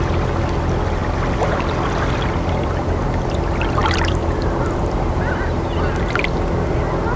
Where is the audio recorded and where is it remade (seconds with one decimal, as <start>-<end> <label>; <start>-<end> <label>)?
0.0-3.8 recorded; 3.8-5.6 remade; 5.6-7.2 recorded